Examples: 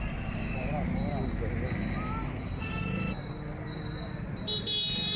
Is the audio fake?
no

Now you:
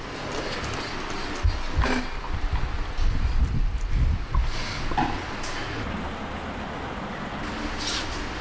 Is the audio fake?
no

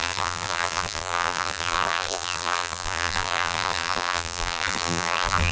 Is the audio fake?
yes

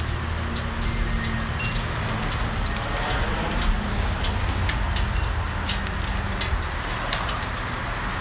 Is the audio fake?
no